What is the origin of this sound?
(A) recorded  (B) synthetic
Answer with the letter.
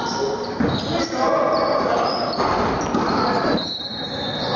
A